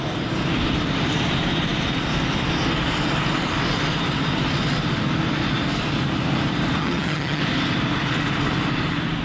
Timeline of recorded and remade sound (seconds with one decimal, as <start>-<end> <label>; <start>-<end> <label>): 0.0-6.8 recorded; 6.8-7.4 remade; 7.4-9.2 recorded